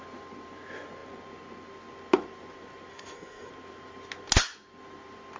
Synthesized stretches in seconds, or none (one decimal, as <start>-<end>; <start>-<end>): 2.9-3.5